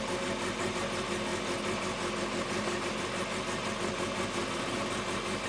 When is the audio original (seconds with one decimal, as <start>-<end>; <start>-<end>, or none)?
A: 0.0-5.5